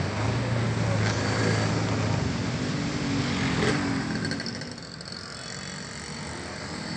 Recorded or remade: recorded